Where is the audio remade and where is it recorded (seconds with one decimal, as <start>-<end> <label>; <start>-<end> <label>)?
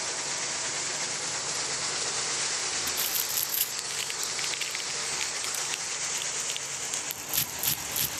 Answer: 0.0-3.5 recorded; 3.5-4.3 remade; 4.3-5.0 recorded; 5.0-5.8 remade; 5.8-8.2 recorded